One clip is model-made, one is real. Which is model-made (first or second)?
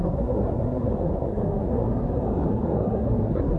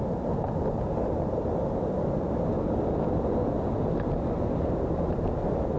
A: first